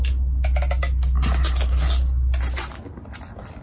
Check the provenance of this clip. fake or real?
real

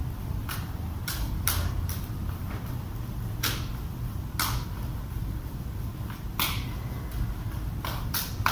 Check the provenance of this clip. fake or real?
fake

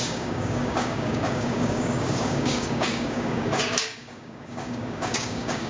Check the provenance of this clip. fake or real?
fake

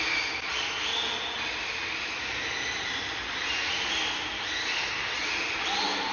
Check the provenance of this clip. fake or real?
real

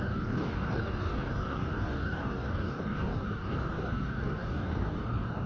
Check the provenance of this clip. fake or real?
fake